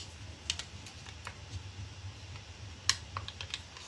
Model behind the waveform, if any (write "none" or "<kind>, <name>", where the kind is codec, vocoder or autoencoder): none